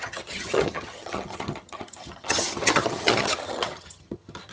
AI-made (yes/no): yes